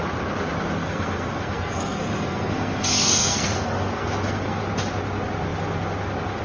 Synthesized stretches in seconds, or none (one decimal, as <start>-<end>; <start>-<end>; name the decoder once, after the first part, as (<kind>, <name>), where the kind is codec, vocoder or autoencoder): 0.8-4.6 (codec, SNAC)